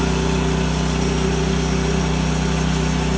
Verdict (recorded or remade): recorded